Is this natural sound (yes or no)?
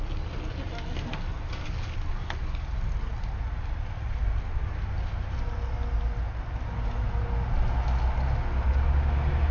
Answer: yes